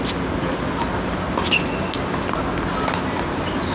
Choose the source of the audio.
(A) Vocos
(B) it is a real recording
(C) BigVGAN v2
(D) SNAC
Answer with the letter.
B